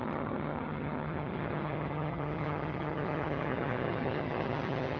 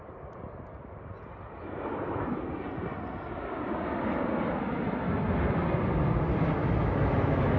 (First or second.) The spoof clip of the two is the first